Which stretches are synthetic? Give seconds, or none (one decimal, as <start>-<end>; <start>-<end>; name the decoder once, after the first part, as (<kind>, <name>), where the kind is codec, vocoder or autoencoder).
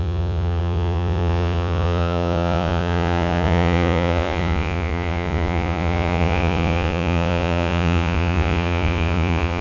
0.0-9.6 (vocoder, Vocos)